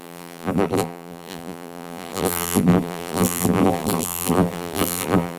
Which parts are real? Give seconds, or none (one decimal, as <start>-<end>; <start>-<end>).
none